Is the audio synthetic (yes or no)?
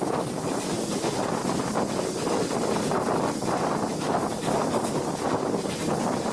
no